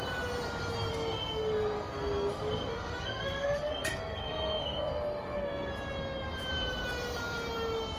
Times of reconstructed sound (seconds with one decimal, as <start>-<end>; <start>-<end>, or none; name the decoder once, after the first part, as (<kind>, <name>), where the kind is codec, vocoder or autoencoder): 0.9-5.7 (codec, SNAC)